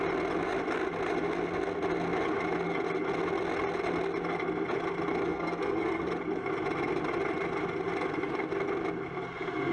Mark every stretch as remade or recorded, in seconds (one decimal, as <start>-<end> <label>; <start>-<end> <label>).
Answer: 0.0-5.3 recorded; 5.3-6.1 remade; 6.1-9.7 recorded